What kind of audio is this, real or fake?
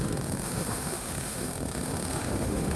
fake